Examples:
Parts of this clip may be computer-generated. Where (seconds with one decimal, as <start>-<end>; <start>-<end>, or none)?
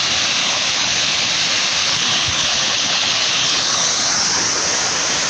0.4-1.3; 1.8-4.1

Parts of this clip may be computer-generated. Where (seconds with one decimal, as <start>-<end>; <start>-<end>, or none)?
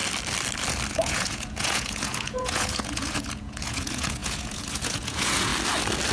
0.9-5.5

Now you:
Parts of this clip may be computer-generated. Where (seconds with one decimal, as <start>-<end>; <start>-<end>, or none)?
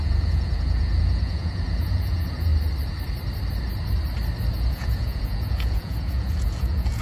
0.0-2.5; 4.5-7.0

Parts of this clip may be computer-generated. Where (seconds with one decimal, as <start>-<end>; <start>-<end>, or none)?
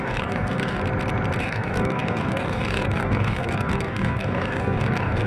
0.0-0.8; 1.4-5.3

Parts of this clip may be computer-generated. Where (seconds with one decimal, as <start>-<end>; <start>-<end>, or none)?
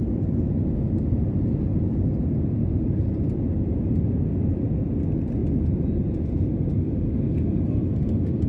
none